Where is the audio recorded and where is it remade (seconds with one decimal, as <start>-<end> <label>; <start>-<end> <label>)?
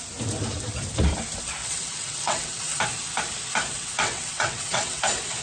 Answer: 0.0-1.6 recorded; 1.6-2.8 remade; 2.8-3.7 recorded; 3.7-5.0 remade; 5.0-5.4 recorded